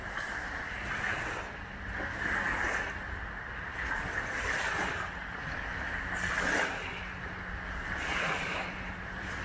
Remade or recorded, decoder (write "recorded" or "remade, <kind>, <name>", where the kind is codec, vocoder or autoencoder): recorded